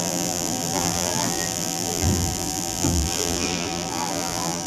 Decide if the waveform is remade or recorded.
remade